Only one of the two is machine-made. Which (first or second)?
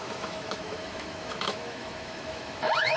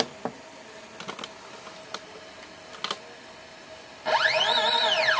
first